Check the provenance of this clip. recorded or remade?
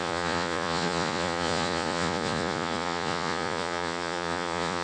remade